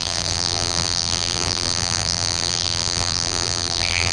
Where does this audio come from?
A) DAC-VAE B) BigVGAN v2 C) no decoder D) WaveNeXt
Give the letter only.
B